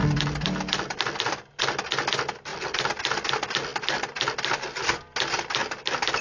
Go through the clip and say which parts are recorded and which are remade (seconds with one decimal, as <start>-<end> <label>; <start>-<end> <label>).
0.0-1.6 remade; 1.6-2.5 recorded; 2.5-3.3 remade; 3.3-6.2 recorded